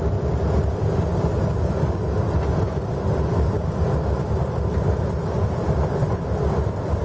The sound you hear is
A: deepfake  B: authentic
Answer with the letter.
B